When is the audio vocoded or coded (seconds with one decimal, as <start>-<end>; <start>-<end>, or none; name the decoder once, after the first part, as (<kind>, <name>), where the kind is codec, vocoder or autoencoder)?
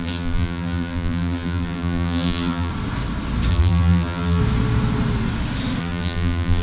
0.0-2.7 (vocoder, BigVGAN v2); 3.5-4.4; 5.8-6.6